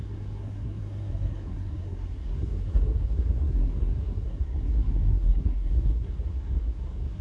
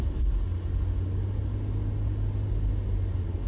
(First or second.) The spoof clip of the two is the first